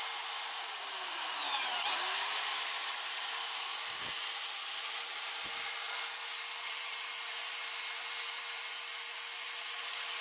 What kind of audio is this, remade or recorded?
recorded